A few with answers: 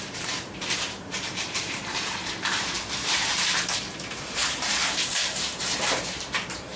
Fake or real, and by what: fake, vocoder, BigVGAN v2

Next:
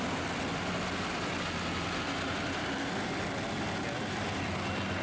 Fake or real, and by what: real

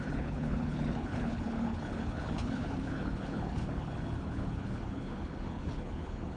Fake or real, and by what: fake, codec, HILCodec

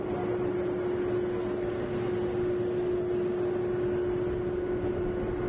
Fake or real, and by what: real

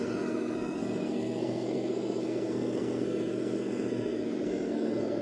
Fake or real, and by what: fake, codec, SNAC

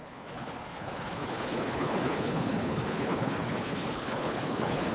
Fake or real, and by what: fake, codec, HILCodec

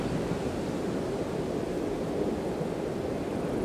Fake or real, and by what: real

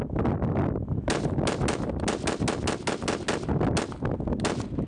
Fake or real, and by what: real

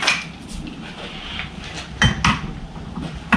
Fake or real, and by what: real